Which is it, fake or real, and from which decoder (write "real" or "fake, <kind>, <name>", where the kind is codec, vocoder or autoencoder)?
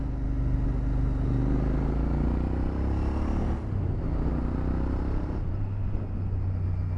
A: real